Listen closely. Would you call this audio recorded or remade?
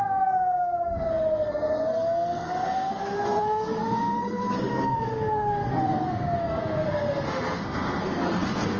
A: remade